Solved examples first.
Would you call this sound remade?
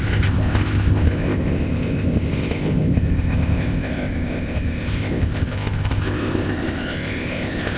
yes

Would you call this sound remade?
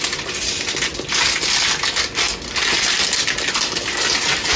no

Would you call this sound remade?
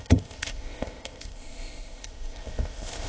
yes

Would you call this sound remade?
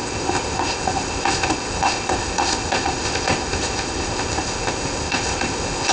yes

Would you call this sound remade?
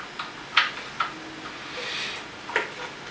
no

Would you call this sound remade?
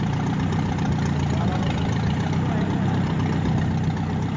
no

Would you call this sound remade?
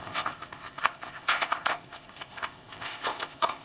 yes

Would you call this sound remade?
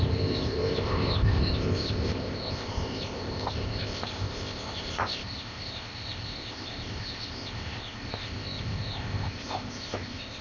yes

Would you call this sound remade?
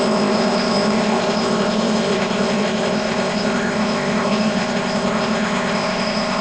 yes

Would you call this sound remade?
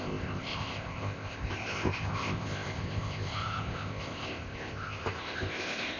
yes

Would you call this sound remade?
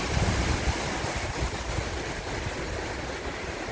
no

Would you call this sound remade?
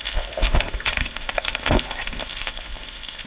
yes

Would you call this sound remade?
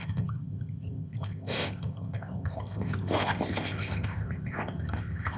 yes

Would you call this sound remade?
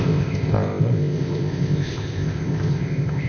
yes